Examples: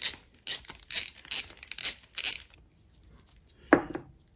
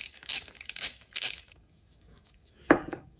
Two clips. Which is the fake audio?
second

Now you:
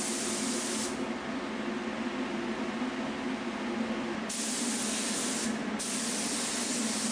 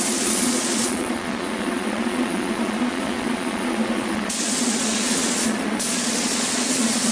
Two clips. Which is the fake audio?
second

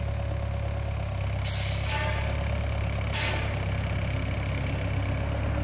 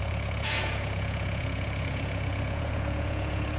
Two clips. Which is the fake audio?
second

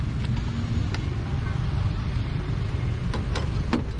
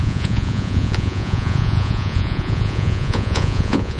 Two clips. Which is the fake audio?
second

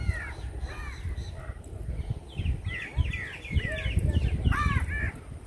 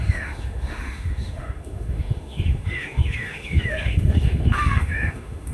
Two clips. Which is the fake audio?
second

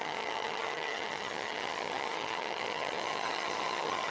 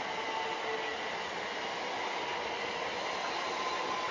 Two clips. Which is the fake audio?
first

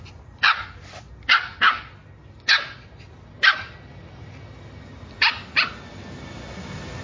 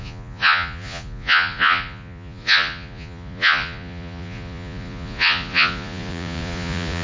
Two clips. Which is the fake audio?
second